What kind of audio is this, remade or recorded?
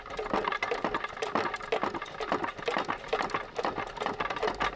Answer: recorded